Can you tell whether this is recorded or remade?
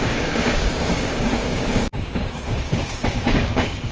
remade